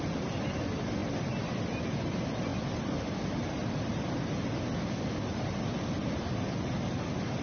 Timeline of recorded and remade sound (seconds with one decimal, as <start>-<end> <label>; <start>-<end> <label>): 0.0-1.0 recorded; 1.0-1.6 remade; 1.6-3.4 recorded; 3.4-4.0 remade; 4.0-7.4 recorded